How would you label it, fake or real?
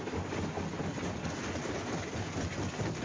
real